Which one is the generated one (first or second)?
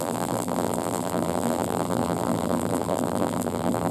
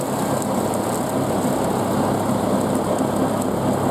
first